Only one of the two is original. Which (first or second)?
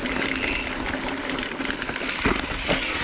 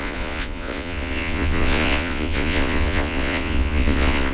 first